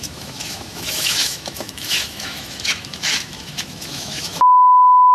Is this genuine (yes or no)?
no